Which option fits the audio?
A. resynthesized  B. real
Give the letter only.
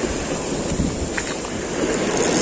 B